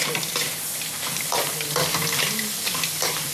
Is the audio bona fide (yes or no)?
yes